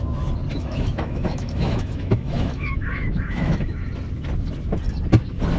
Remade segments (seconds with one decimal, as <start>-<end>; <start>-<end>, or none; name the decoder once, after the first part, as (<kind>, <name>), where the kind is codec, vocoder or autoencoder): 0.5-3.9 (autoencoder, DAC-VAE)